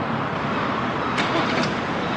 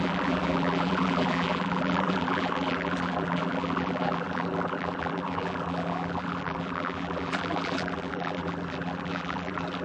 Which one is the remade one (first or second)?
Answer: second